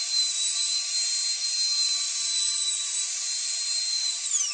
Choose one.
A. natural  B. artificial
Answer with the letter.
B